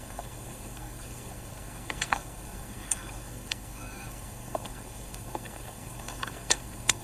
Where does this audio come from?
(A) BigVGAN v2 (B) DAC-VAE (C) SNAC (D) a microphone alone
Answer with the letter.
C